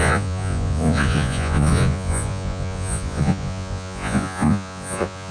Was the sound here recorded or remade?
remade